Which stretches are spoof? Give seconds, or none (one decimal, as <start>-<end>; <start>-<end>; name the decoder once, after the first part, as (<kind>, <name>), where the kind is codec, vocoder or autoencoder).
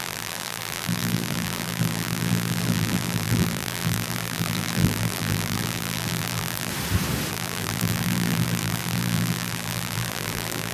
0.0-6.7 (vocoder, BigVGAN v2); 7.3-10.7